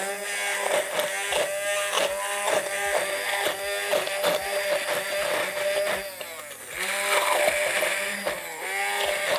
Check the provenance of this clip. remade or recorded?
recorded